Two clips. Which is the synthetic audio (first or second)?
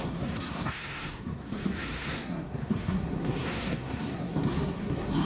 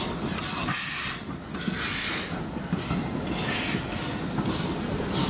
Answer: first